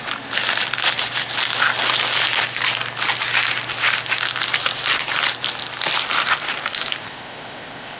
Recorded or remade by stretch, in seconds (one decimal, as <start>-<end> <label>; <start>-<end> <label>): 0.0-7.0 recorded; 7.0-8.0 remade